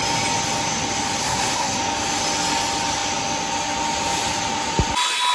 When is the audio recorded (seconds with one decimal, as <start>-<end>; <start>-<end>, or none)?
0.0-1.2; 1.8-5.3